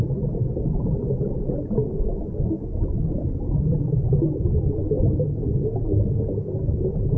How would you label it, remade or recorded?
recorded